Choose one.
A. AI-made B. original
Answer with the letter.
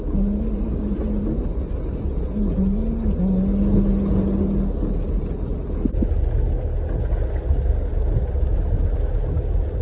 B